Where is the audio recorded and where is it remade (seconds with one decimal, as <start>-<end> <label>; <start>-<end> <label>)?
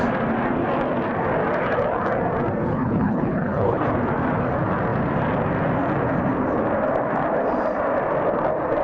0.0-2.7 recorded; 2.7-3.9 remade; 3.9-8.8 recorded